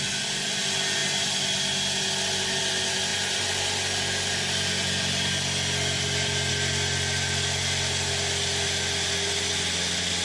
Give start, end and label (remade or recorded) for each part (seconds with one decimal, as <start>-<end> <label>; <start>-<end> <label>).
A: 0.0-10.2 recorded